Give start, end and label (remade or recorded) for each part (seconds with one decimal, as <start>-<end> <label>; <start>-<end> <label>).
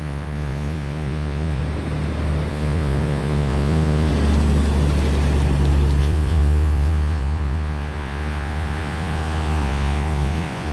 0.0-1.6 remade; 1.6-2.5 recorded; 2.5-4.1 remade; 4.1-6.0 recorded; 6.0-10.7 remade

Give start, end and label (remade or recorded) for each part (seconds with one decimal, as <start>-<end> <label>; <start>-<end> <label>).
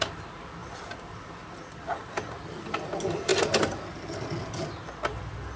0.0-5.6 recorded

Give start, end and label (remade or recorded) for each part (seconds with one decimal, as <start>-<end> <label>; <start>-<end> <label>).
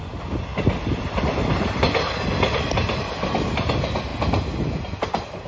0.0-5.5 recorded